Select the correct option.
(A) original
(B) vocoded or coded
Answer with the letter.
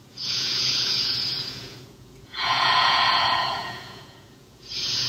B